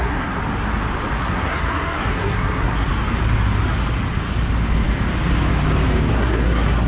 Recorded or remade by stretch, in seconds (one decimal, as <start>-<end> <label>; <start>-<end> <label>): 0.0-0.4 remade; 0.4-1.2 recorded; 1.2-2.9 remade; 2.9-6.1 recorded; 6.1-6.9 remade